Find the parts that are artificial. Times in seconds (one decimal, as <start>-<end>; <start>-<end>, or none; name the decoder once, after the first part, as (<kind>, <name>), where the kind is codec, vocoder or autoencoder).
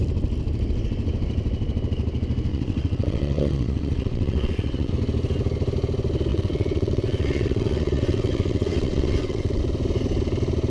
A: 2.5-4.9 (vocoder, WaveNeXt); 6.3-9.6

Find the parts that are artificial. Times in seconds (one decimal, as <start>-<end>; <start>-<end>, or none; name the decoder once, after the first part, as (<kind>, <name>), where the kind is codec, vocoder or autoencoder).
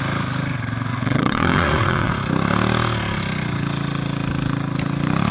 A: 0.9-2.1 (vocoder, WaveNeXt)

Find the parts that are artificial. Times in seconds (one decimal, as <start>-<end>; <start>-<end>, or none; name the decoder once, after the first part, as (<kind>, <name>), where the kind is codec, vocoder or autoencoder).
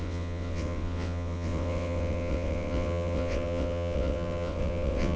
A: 0.0-5.2 (vocoder, WaveNeXt)